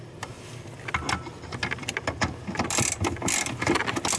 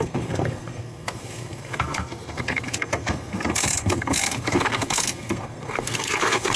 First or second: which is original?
first